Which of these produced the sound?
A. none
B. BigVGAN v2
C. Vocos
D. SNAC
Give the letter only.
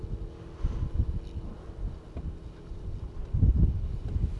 A